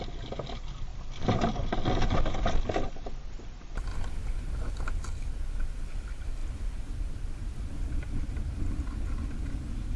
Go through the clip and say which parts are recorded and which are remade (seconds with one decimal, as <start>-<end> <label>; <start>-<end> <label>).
0.0-3.9 recorded; 3.9-4.9 remade; 4.9-10.0 recorded